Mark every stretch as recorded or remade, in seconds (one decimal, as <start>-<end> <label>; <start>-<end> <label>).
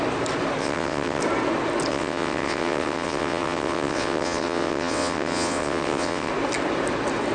0.0-0.6 recorded; 0.6-1.2 remade; 1.2-1.9 recorded; 1.9-6.3 remade; 6.3-7.3 recorded